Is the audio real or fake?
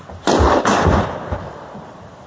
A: real